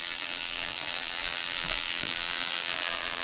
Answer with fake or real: fake